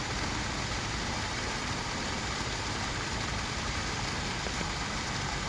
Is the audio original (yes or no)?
yes